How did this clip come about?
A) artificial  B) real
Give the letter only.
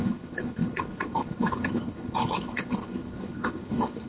A